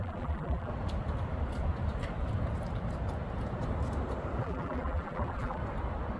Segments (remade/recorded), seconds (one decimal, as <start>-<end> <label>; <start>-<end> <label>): 0.0-0.7 remade; 0.7-4.4 recorded; 4.4-5.6 remade; 5.6-6.2 recorded